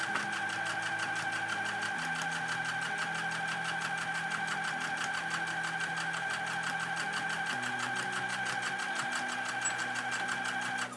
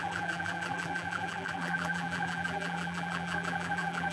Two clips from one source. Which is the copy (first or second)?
second